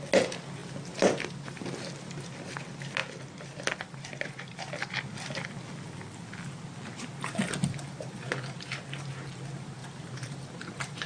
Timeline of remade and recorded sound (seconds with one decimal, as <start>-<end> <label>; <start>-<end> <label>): 0.0-9.8 recorded; 9.8-11.1 remade